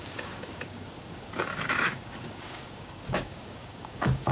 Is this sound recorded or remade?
remade